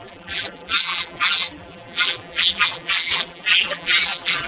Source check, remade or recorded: remade